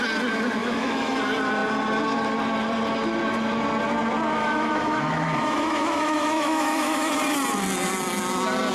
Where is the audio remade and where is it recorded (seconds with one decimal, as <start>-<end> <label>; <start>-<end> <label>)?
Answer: 0.0-0.6 recorded; 0.6-1.2 remade; 1.2-4.4 recorded; 4.4-7.1 remade; 7.1-8.7 recorded